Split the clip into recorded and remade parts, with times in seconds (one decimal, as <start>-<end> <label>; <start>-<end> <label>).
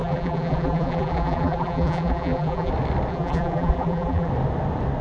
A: 0.0-2.7 remade; 2.7-3.1 recorded; 3.1-4.3 remade; 4.3-5.0 recorded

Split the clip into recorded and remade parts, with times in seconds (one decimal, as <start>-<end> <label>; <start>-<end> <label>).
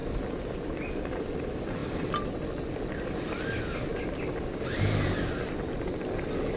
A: 0.0-6.6 recorded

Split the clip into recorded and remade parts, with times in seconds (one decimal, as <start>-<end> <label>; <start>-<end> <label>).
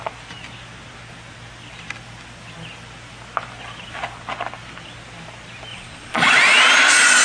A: 0.0-5.7 recorded; 5.7-6.6 remade; 6.6-7.2 recorded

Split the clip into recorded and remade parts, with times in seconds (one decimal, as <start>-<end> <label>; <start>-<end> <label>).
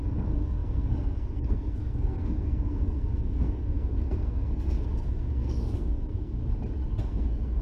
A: 0.0-6.4 remade; 6.4-7.0 recorded; 7.0-7.6 remade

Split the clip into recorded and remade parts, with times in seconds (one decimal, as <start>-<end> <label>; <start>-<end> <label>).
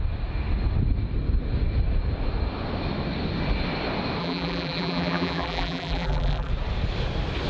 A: 0.0-4.2 recorded; 4.2-6.5 remade; 6.5-7.5 recorded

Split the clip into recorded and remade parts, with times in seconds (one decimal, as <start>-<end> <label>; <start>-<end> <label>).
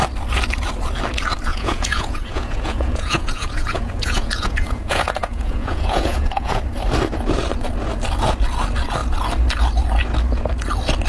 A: 0.0-1.5 recorded; 1.5-6.6 remade; 6.6-11.1 recorded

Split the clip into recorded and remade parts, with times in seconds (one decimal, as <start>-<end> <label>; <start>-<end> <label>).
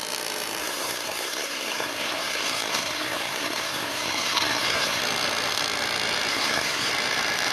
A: 0.0-0.6 recorded; 0.6-5.0 remade; 5.0-6.3 recorded; 6.3-6.9 remade; 6.9-7.5 recorded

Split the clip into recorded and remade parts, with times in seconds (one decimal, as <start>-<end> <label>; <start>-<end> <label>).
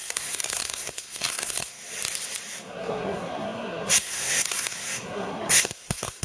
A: 0.0-1.8 remade; 1.8-2.5 recorded; 2.5-6.2 remade